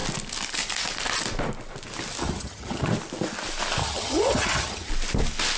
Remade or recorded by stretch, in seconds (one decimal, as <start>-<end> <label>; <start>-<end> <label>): 0.0-2.2 recorded; 2.2-2.9 remade; 2.9-3.8 recorded; 3.8-4.9 remade; 4.9-5.6 recorded